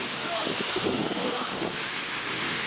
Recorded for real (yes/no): no